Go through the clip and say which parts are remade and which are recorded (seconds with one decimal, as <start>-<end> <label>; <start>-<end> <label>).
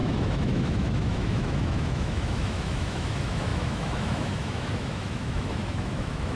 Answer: 0.0-6.4 remade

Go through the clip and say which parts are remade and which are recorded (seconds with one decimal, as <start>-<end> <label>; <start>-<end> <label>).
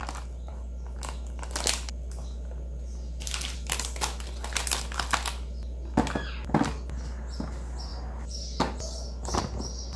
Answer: 0.0-10.0 recorded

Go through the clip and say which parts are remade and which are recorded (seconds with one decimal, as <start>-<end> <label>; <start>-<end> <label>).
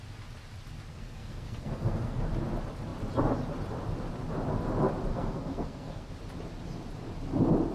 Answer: 0.0-0.9 recorded; 0.9-2.3 remade; 2.3-5.1 recorded; 5.1-6.1 remade; 6.1-7.7 recorded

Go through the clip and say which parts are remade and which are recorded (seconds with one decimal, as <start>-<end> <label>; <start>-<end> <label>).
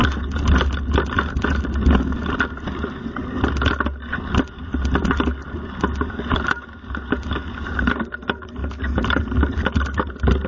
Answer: 0.0-10.5 recorded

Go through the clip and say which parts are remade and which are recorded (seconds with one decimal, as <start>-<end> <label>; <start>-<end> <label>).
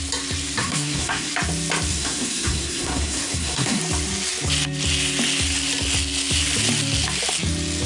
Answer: 0.0-0.6 recorded; 0.6-1.3 remade; 1.3-1.9 recorded; 1.9-3.8 remade; 3.8-7.9 recorded